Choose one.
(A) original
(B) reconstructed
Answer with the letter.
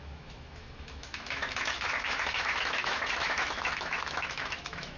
B